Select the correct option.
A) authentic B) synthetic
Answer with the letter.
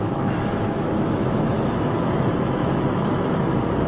B